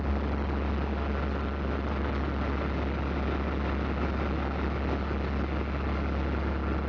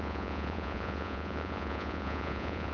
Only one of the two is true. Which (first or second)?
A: first